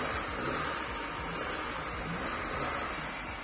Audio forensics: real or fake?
real